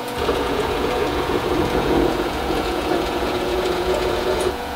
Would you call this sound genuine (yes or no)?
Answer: no